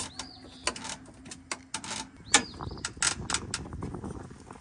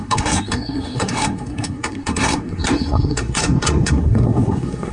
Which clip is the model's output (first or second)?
second